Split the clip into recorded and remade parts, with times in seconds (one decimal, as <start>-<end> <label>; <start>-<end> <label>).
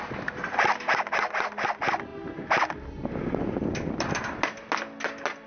0.0-5.5 recorded